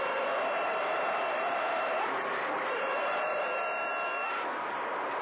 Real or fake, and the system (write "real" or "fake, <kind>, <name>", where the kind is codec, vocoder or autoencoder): fake, vocoder, BigVGAN v2